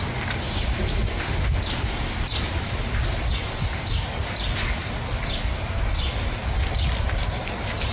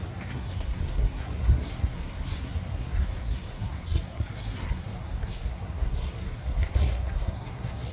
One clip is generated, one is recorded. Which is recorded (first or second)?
first